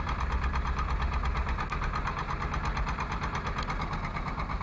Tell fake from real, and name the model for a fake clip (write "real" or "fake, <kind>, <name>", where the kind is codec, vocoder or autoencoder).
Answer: real